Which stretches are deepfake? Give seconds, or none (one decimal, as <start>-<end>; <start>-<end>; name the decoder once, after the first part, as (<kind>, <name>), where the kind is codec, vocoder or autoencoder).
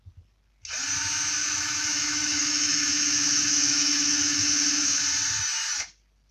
1.4-5.0 (autoencoder, DAC-VAE)